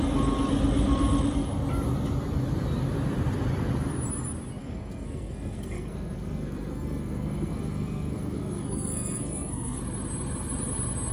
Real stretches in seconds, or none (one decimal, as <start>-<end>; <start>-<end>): 0.0-4.6; 9.8-11.1